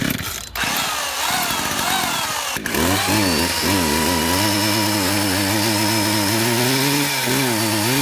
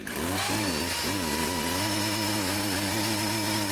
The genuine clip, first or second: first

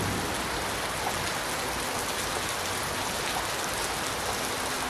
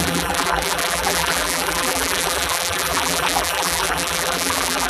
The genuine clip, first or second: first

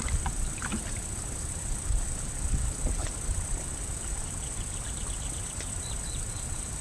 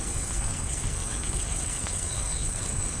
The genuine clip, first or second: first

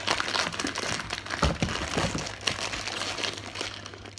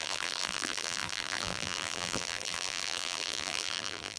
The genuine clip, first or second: first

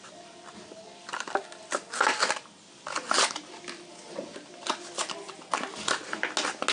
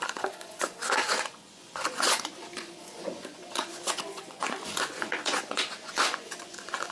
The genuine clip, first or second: first